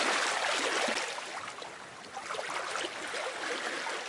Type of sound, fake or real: real